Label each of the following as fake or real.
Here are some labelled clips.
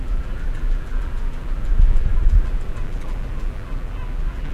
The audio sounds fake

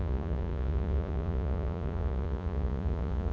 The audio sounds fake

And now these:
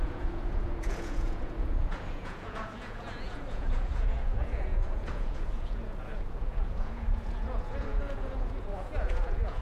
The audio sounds fake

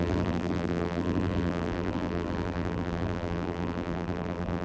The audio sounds fake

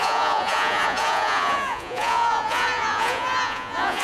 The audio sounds fake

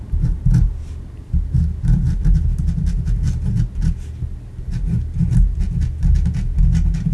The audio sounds real